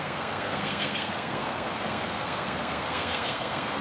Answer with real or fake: fake